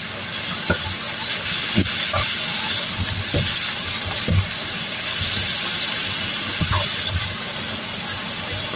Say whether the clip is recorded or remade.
recorded